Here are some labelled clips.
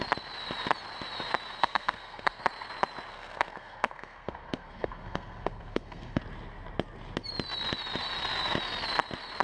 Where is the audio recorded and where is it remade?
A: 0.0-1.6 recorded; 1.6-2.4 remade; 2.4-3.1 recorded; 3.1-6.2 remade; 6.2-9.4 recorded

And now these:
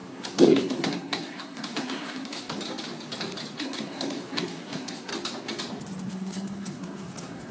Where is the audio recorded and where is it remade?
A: 0.0-2.6 remade; 2.6-3.6 recorded; 3.6-5.1 remade; 5.1-6.1 recorded; 6.1-7.5 remade

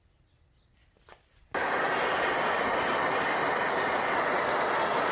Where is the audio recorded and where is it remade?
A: 0.0-5.1 recorded

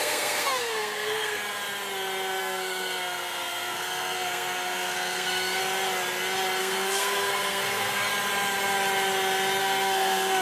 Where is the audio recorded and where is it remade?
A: 0.0-1.4 remade; 1.4-2.4 recorded; 2.4-5.6 remade; 5.6-6.6 recorded; 6.6-8.1 remade; 8.1-9.6 recorded; 9.6-10.4 remade

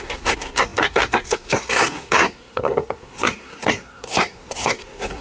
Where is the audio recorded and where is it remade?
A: 0.0-5.2 remade